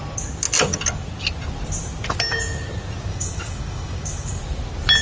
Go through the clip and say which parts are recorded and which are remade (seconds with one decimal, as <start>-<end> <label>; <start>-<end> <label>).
0.0-3.1 recorded; 3.1-4.4 remade; 4.4-5.0 recorded

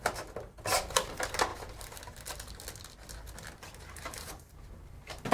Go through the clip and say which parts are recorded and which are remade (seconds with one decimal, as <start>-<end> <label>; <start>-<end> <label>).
0.0-5.3 recorded

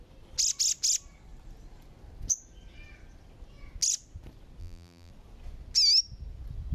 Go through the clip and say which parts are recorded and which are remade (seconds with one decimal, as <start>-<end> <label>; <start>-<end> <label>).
0.0-4.6 recorded; 4.6-5.1 remade; 5.1-6.7 recorded

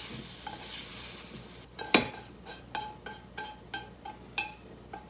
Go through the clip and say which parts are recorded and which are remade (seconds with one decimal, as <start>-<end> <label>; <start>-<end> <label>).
0.0-5.1 recorded

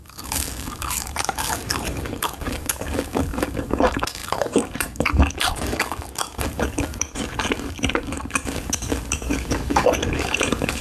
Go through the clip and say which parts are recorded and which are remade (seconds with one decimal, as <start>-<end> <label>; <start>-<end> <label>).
0.0-10.8 remade

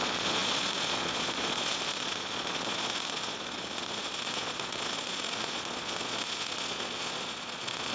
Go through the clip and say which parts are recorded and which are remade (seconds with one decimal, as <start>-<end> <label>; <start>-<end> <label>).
0.0-7.9 remade